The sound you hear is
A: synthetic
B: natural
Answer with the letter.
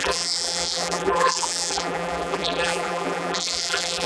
A